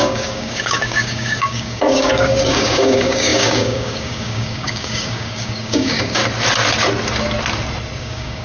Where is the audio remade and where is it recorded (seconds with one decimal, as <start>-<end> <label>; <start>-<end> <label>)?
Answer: 0.0-6.2 remade; 6.2-8.0 recorded; 8.0-8.4 remade